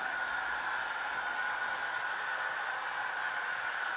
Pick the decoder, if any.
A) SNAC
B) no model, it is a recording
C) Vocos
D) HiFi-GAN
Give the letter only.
B